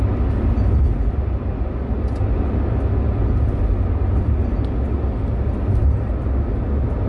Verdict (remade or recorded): recorded